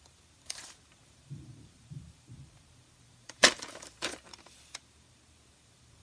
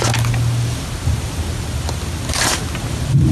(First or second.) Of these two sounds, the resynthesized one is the first